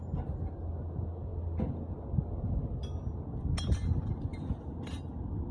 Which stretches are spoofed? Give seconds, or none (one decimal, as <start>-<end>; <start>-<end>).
4.3-4.9